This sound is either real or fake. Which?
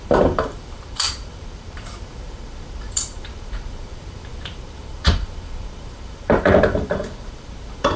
fake